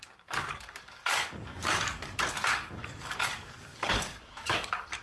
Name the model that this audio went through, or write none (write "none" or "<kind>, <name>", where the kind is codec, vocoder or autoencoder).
codec, DAC